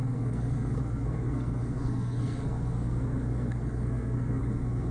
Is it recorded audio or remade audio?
remade